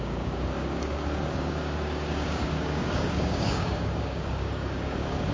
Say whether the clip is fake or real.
fake